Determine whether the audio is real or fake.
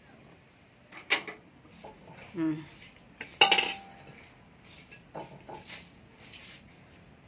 real